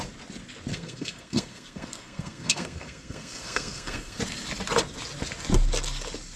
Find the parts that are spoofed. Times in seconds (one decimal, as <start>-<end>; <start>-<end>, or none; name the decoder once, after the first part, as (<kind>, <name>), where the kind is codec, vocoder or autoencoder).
0.7-4.2 (codec, SNAC)